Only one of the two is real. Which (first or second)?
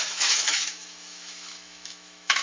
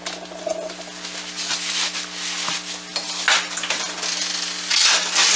second